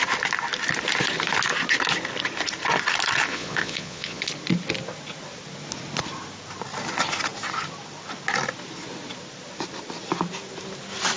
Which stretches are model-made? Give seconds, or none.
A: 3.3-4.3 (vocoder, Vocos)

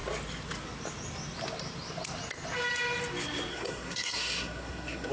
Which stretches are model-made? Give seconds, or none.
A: 3.5-5.1 (codec, SNAC)

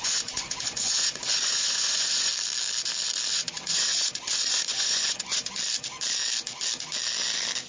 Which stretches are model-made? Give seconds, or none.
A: 0.0-2.3 (vocoder, Vocos); 3.3-5.5